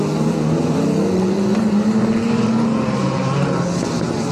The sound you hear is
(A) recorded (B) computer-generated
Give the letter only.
A